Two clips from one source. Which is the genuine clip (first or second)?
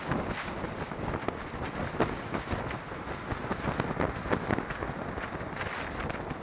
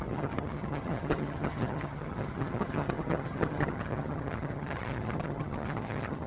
first